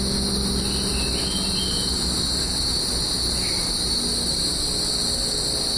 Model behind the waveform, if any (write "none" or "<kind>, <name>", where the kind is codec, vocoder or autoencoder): none